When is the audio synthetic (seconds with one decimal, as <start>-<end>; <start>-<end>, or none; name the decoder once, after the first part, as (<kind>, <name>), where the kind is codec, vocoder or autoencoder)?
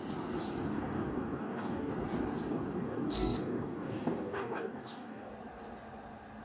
0.7-1.9 (codec, DAC); 2.5-5.3